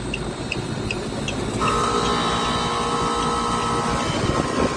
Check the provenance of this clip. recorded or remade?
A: recorded